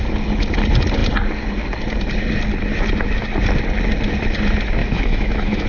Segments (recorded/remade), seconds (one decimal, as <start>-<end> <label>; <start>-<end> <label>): 0.0-4.8 recorded; 4.8-5.7 remade